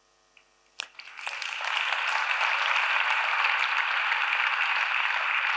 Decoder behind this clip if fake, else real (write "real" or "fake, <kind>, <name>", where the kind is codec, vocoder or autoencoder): real